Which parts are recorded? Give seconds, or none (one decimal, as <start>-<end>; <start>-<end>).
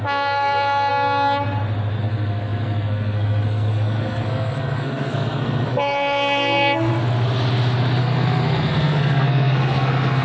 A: 0.9-2.0; 6.9-8.0